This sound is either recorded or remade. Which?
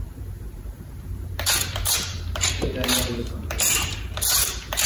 remade